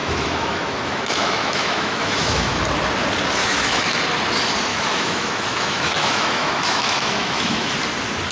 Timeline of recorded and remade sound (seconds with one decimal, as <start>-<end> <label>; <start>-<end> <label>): 0.0-2.6 remade; 2.6-3.4 recorded; 3.4-4.0 remade; 4.0-4.7 recorded; 4.7-7.7 remade; 7.7-8.3 recorded

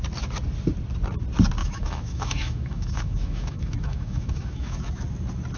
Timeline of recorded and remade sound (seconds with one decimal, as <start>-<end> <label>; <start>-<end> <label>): 0.0-1.6 recorded; 1.6-5.0 remade; 5.0-5.6 recorded